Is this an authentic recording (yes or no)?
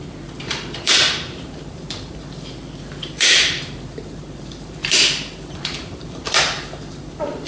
no